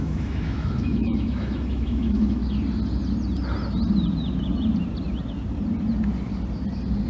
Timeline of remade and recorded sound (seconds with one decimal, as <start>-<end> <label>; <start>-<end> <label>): 0.0-2.4 remade; 2.4-7.1 recorded